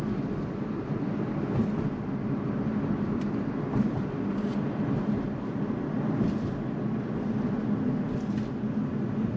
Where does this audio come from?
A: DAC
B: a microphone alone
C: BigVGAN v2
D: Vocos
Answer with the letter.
B